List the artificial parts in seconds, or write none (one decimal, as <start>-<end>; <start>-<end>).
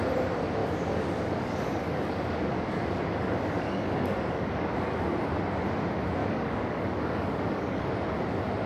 0.6-5.2; 6.2-7.8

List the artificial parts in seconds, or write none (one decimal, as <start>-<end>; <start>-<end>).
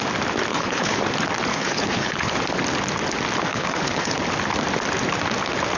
0.5-1.0; 1.5-2.3; 3.5-4.2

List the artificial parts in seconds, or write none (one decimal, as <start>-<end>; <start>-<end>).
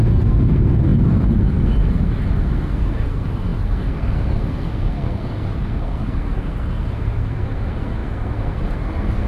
0.0-9.3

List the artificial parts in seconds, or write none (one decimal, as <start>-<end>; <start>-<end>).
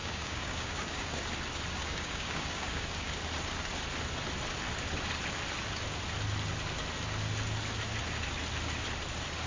0.0-1.2; 1.8-3.1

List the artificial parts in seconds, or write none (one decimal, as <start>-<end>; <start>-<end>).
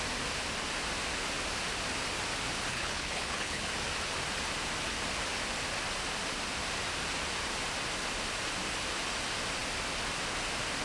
2.7-3.7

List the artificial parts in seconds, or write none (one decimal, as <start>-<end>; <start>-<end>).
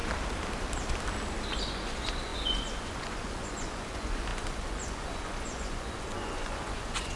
1.7-7.2